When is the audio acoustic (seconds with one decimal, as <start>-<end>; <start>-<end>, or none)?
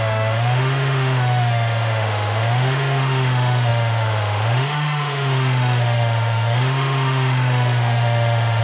none